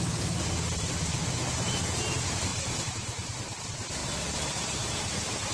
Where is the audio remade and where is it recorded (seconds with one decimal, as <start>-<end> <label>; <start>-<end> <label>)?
0.0-5.5 recorded